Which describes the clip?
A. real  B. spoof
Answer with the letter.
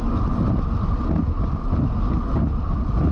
A